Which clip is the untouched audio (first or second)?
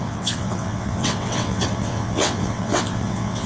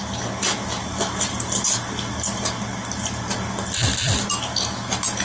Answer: second